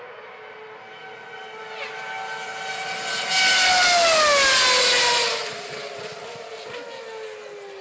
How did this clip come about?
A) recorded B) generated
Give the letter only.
A